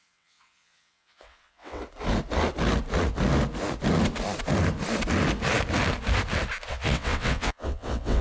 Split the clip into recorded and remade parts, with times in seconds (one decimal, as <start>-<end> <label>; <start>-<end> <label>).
0.0-1.8 remade; 1.8-6.7 recorded; 6.7-8.2 remade